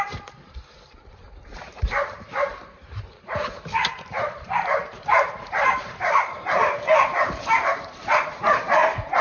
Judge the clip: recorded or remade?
remade